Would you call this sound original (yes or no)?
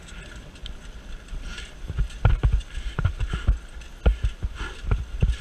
yes